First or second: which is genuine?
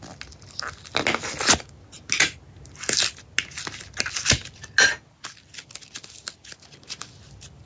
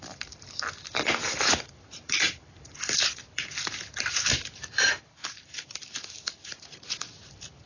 first